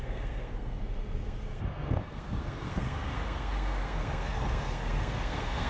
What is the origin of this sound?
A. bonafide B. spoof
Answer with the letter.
B